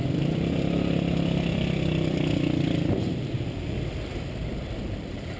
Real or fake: fake